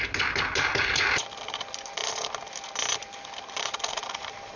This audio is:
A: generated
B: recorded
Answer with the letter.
B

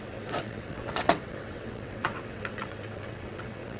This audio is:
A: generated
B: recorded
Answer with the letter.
A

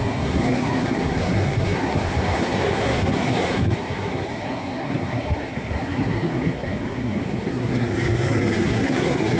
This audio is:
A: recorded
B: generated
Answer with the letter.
B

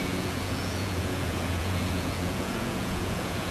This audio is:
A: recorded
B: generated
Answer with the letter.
B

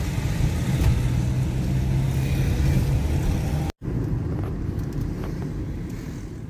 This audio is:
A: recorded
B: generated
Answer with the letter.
A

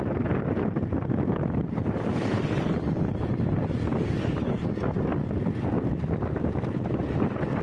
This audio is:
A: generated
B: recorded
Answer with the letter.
B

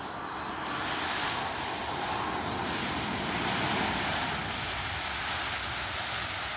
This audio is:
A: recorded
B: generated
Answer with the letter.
A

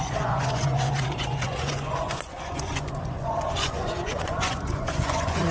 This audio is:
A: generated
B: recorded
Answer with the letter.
A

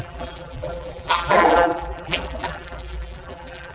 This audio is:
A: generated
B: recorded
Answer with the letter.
A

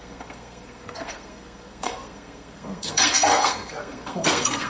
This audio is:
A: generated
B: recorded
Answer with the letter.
A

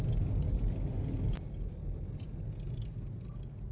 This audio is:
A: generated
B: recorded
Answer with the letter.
B